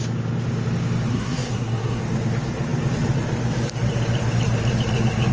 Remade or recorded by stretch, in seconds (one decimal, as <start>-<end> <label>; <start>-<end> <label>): 0.0-1.1 recorded; 1.1-2.0 remade; 2.0-5.3 recorded